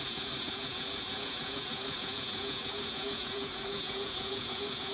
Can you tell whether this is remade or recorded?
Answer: remade